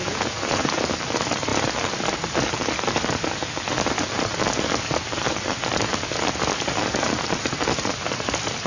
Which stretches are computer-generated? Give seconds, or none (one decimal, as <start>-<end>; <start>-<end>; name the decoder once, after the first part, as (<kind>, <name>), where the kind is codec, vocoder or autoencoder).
0.0-0.8 (vocoder, Vocos)